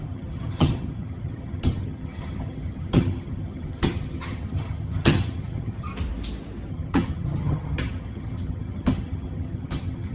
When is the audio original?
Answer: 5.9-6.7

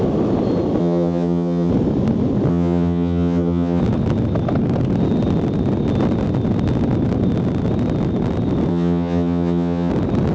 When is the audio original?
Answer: 0.0-0.8; 1.7-2.5; 3.8-8.7; 9.9-10.3

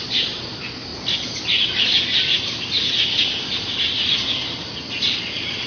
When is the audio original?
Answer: 0.0-5.7

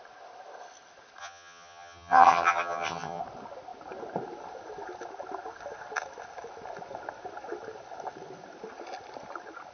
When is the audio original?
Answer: 0.0-1.2; 3.2-9.7